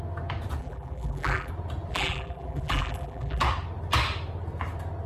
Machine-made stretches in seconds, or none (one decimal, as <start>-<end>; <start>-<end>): 0.6-1.5; 1.9-3.4